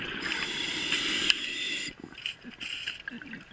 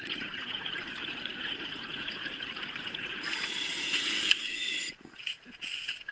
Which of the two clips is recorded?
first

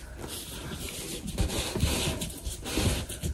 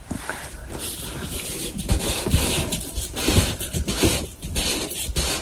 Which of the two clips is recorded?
first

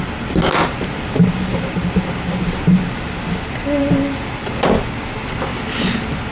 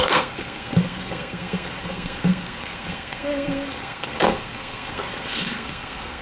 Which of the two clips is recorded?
first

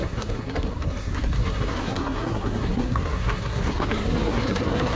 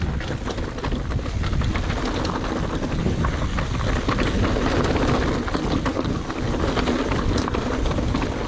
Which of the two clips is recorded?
second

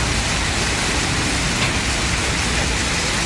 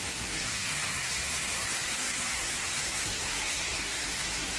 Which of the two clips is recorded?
first